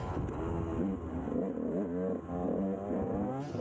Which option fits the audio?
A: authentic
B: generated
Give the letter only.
A